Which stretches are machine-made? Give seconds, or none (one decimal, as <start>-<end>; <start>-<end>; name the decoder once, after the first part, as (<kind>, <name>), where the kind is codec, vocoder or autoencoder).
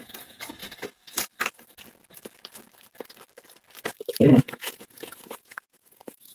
0.0-0.6 (vocoder, Vocos); 4.4-6.3